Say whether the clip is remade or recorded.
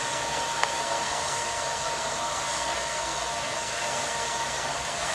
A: remade